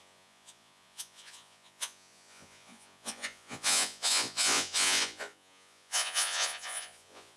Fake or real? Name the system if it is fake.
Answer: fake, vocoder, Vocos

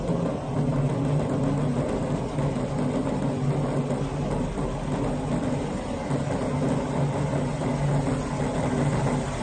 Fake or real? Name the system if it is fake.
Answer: real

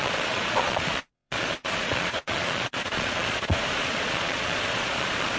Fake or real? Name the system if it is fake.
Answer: fake, vocoder, Vocos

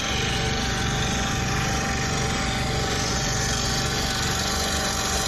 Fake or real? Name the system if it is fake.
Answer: fake, vocoder, Vocos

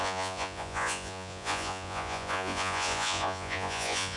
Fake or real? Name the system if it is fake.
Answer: fake, vocoder, Vocos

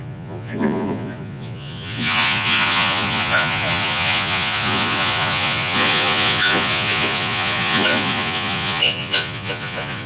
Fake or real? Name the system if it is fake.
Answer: fake, vocoder, Vocos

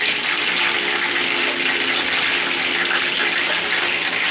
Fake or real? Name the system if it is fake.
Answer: real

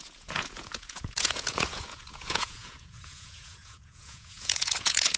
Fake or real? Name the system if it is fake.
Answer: fake, vocoder, Vocos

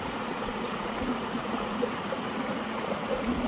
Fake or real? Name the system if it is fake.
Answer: fake, vocoder, Vocos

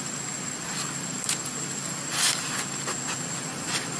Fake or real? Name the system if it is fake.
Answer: real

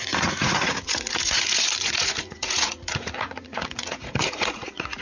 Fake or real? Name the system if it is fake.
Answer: fake, vocoder, Vocos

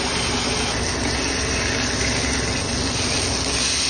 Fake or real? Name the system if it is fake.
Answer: real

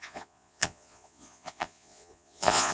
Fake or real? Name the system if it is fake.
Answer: fake, vocoder, Vocos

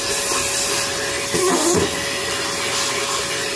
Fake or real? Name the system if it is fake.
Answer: real